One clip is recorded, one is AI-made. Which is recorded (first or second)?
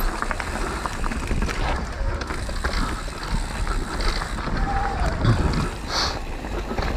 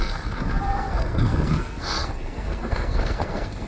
first